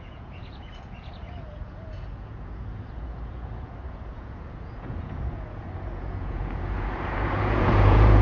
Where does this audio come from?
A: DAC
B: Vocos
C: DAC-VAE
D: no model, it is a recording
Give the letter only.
B